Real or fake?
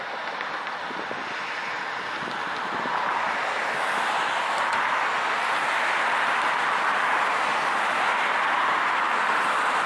real